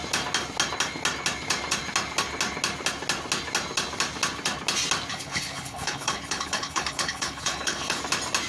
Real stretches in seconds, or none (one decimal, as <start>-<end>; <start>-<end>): 0.0-5.1; 8.0-8.5

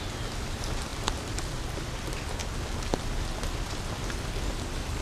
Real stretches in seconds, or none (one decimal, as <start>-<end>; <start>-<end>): 0.0-0.9; 1.8-5.0